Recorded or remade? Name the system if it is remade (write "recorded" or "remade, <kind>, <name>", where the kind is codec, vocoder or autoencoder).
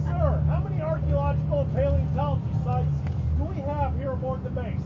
recorded